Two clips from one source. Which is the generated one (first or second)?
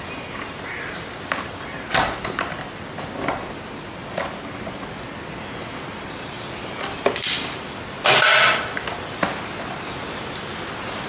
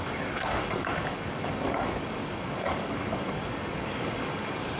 second